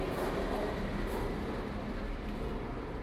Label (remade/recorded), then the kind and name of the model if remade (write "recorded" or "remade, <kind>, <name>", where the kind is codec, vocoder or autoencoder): recorded